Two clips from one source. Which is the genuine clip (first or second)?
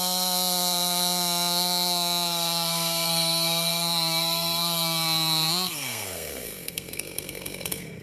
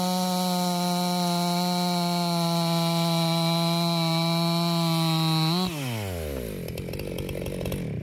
second